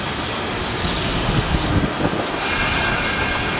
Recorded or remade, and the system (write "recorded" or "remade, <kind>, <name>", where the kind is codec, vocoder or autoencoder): recorded